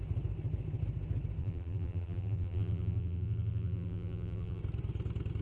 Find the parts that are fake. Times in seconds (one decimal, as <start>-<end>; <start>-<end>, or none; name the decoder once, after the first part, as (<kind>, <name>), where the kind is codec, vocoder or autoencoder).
1.4-4.6 (vocoder, BigVGAN v2)